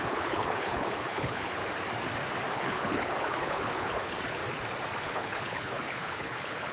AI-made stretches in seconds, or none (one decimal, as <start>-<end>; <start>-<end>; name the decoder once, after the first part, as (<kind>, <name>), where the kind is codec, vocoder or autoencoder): 0.0-1.6 (codec, HILCodec); 2.5-4.4; 5.0-6.7